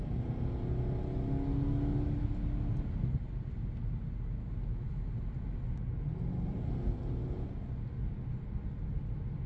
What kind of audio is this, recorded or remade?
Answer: recorded